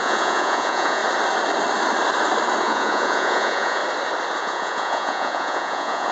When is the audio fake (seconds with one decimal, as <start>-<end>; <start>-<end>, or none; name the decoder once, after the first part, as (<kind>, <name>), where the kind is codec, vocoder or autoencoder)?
0.0-1.0 (vocoder, Vocos); 2.6-3.8; 4.4-6.1